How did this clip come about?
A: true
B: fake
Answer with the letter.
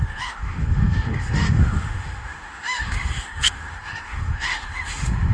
B